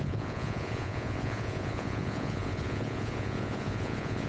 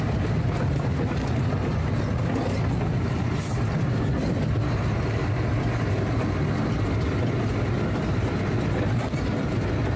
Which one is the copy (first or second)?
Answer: first